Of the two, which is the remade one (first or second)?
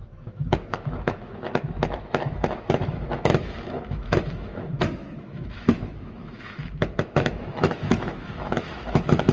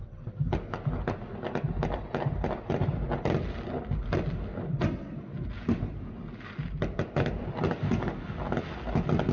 first